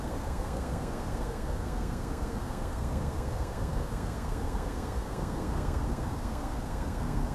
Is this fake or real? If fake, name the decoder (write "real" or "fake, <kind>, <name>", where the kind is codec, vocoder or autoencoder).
fake, codec, SNAC